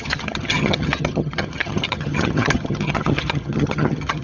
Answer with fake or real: fake